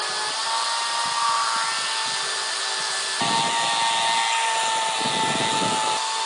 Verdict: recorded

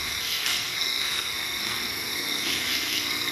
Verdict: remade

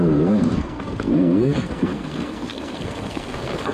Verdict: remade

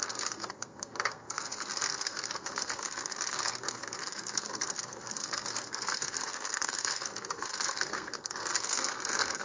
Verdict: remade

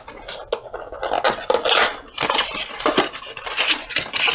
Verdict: recorded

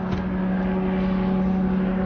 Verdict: recorded